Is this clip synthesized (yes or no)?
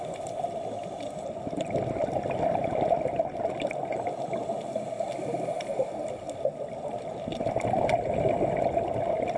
no